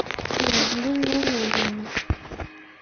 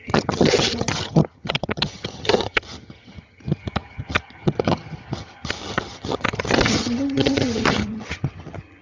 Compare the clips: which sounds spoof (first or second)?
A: second